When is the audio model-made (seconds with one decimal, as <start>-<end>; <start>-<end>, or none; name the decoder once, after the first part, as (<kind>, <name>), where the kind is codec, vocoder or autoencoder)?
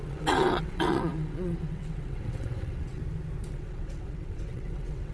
0.0-3.0 (vocoder, WaveNeXt); 3.5-5.1